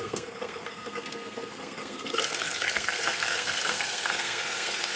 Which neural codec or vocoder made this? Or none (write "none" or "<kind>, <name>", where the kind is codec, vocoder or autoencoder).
codec, SNAC